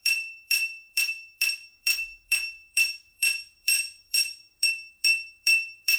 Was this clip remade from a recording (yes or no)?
yes